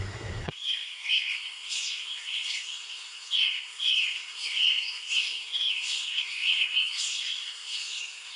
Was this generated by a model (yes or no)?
yes